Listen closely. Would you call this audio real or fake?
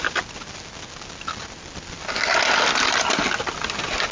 real